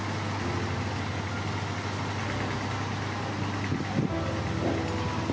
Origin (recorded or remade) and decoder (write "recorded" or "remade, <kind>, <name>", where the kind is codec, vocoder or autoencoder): recorded